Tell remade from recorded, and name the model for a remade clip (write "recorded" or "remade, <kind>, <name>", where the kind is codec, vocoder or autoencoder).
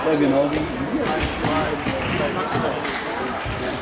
recorded